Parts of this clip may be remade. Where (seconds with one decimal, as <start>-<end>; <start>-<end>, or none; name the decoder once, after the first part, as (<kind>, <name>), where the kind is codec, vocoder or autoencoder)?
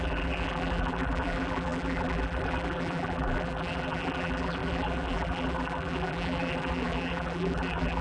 0.0-8.0 (vocoder, BigVGAN v2)